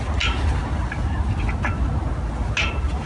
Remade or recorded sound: recorded